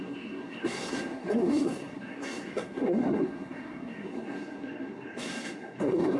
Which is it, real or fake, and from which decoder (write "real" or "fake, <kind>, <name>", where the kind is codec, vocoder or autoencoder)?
fake, codec, SNAC